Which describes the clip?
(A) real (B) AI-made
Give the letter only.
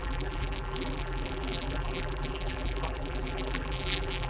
B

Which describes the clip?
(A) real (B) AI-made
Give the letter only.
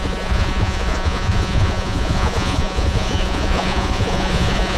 B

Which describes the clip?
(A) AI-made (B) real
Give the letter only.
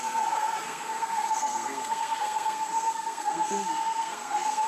A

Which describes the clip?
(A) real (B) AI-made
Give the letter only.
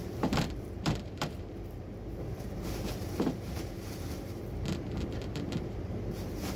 B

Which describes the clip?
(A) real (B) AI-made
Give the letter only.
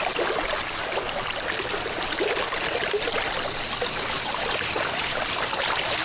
A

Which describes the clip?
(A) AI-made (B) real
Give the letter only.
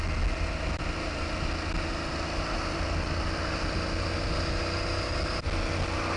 B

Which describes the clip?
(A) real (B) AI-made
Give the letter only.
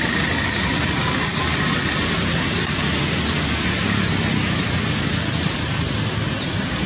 A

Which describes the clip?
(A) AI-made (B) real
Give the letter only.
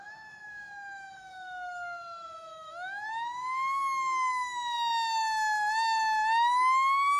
A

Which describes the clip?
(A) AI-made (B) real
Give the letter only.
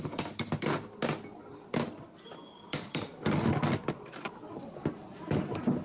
B